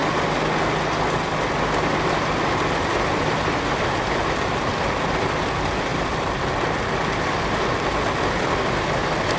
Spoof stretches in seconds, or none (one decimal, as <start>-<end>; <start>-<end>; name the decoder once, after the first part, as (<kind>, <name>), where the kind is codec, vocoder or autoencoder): 5.9-6.8 (vocoder, BigVGAN v2)